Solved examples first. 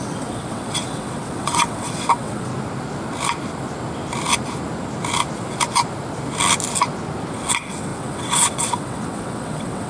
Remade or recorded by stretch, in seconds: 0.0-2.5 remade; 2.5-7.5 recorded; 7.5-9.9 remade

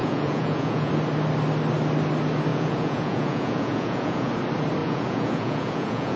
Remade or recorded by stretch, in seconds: 0.0-0.9 remade; 0.9-2.5 recorded; 2.5-4.3 remade; 4.3-4.8 recorded; 4.8-6.2 remade

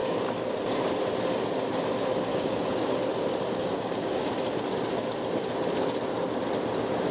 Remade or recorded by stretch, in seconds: 0.0-0.6 remade; 0.6-2.3 recorded; 2.3-3.0 remade; 3.0-3.6 recorded; 3.6-4.3 remade; 4.3-7.1 recorded